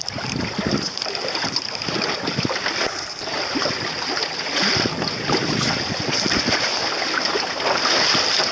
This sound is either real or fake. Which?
real